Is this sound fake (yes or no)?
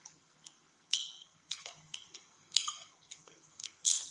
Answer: yes